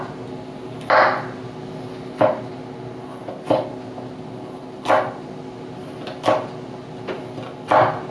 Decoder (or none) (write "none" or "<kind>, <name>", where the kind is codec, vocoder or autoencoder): none